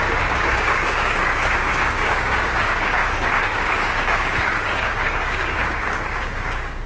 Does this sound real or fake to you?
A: fake